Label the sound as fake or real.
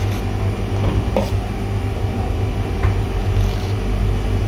real